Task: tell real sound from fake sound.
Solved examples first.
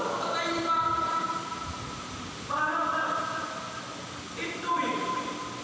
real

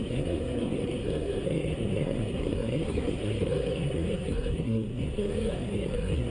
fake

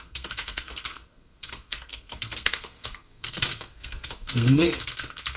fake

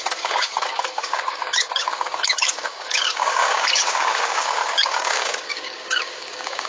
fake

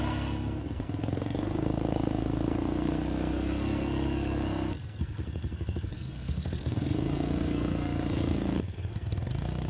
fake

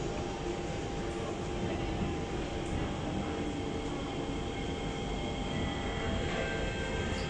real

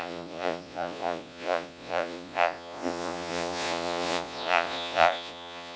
fake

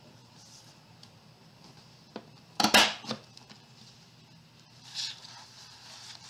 real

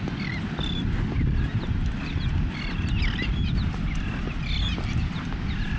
real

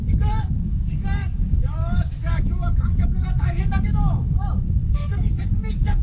fake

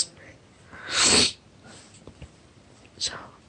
real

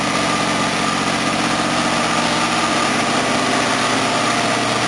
real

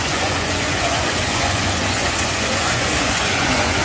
fake